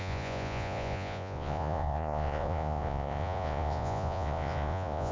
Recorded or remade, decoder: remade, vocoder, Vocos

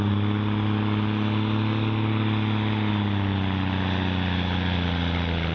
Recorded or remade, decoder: recorded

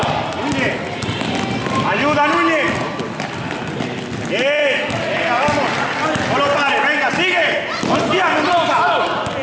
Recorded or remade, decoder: recorded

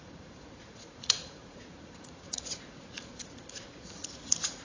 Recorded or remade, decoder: remade, vocoder, Vocos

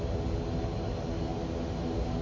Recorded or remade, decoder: recorded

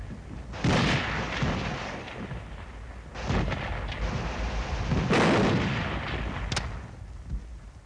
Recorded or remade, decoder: recorded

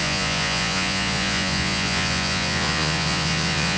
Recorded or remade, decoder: remade, vocoder, Vocos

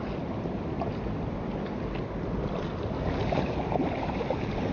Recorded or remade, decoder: recorded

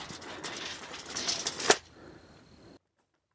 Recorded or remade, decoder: recorded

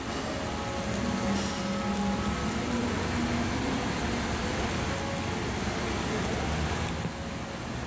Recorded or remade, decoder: recorded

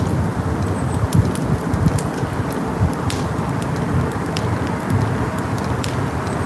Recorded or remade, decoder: recorded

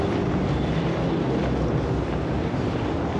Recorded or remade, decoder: recorded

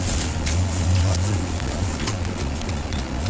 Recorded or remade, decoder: remade, vocoder, Vocos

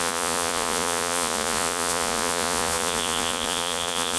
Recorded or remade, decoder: remade, vocoder, Vocos